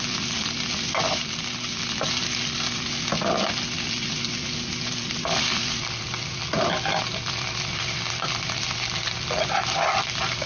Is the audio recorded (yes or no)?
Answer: yes